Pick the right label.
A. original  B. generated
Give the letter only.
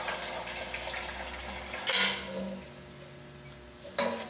A